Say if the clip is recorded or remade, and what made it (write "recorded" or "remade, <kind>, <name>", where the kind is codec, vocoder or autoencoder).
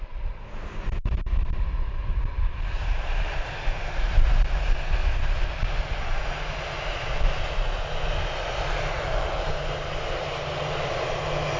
recorded